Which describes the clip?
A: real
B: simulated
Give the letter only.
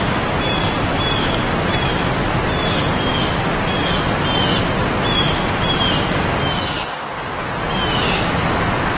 A